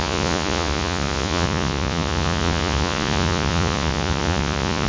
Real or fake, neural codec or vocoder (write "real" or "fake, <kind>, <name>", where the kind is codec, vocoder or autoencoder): fake, vocoder, Vocos